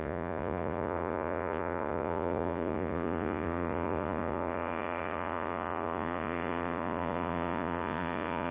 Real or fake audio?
fake